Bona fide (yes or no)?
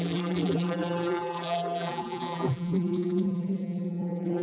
no